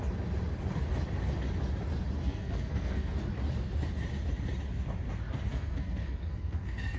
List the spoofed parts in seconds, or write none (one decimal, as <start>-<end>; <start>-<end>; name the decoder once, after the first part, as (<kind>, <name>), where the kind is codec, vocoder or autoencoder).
2.2-3.2 (codec, SNAC); 5.5-7.0